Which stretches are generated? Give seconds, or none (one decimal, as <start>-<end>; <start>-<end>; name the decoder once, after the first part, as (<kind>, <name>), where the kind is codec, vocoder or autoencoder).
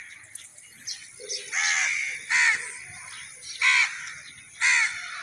none